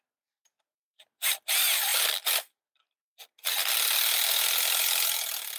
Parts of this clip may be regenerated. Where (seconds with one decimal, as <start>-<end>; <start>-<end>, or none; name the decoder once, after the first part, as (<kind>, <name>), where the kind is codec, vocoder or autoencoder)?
none